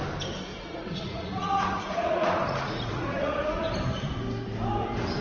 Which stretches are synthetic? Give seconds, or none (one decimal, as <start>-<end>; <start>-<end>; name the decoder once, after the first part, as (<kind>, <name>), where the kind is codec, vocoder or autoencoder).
0.5-3.6 (vocoder, Vocos)